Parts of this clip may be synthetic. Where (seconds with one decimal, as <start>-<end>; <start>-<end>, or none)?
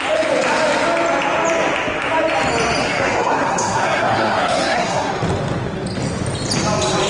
2.8-5.1